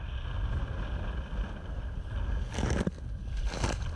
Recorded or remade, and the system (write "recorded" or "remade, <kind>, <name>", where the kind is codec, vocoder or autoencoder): recorded